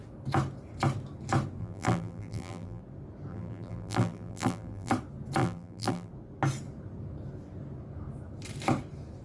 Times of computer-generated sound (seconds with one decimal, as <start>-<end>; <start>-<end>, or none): 1.6-2.8; 3.3-4.9; 5.4-6.1